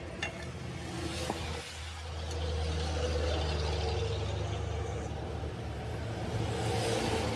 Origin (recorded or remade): recorded